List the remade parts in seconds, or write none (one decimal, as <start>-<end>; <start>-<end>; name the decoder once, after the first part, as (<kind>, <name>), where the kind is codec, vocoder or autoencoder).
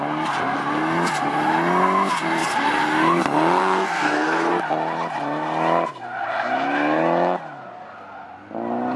3.6-4.6 (codec, SNAC)